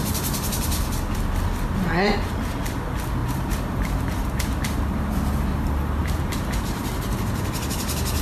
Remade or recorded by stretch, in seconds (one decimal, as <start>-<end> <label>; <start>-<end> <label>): 0.0-0.8 remade; 0.8-3.2 recorded; 3.2-5.0 remade; 5.0-6.0 recorded; 6.0-6.9 remade; 6.9-8.2 recorded